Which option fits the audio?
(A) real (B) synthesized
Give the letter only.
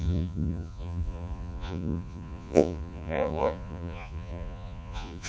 B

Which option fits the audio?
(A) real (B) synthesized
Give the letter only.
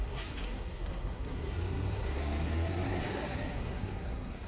B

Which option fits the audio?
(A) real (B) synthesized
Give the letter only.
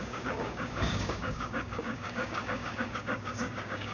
B